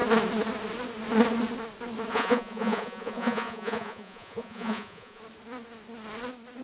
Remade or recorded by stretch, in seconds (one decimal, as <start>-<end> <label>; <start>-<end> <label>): 0.0-2.1 recorded; 2.1-5.2 remade; 5.2-6.6 recorded